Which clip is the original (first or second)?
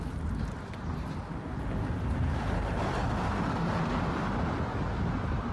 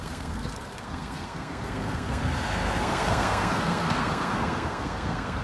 first